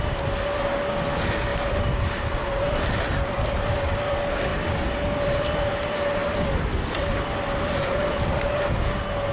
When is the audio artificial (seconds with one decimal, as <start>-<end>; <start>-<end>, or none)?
1.5-2.9; 6.2-8.5